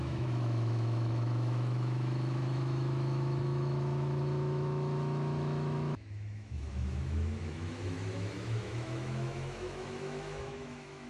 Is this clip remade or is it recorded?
remade